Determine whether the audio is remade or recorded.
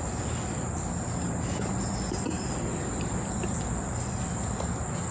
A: recorded